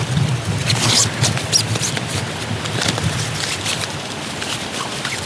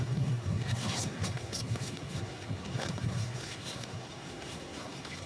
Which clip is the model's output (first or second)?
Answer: second